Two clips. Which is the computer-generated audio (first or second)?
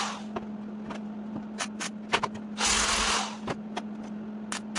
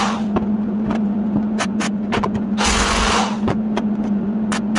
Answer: second